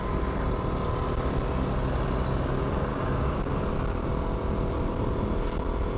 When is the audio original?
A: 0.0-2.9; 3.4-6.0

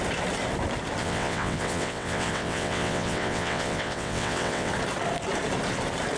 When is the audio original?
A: 0.0-1.0; 4.7-6.2

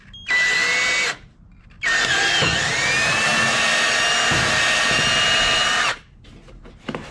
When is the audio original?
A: 0.0-5.6; 6.3-7.1